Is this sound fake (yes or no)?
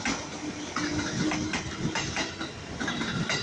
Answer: no